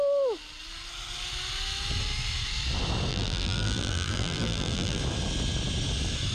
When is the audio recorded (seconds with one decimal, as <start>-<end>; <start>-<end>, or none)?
0.0-3.1; 5.0-6.3